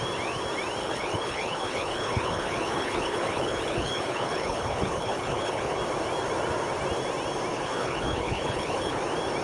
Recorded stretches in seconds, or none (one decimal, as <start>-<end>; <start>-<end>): 0.0-0.8; 5.8-7.5; 9.0-9.4